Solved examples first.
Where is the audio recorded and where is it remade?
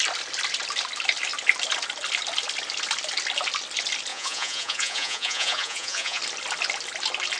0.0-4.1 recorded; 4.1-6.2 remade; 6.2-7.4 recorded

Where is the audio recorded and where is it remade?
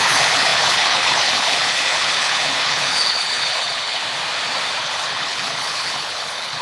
0.0-4.0 remade; 4.0-4.8 recorded; 4.8-6.6 remade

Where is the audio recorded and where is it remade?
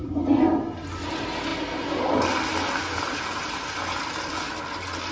0.0-5.1 recorded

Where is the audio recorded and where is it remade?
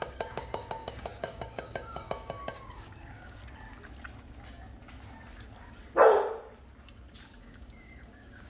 0.0-3.4 remade; 3.4-7.4 recorded; 7.4-8.5 remade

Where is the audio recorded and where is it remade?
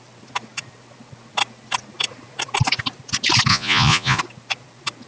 0.0-3.5 recorded; 3.5-4.2 remade; 4.2-5.1 recorded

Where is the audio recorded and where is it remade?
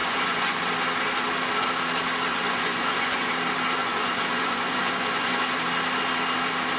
0.0-0.7 remade; 0.7-2.3 recorded; 2.3-3.3 remade; 3.3-3.8 recorded; 3.8-5.4 remade; 5.4-6.8 recorded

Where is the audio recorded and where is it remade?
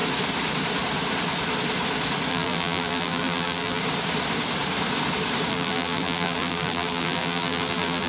0.0-2.3 recorded; 2.3-3.8 remade; 3.8-5.5 recorded; 5.5-8.1 remade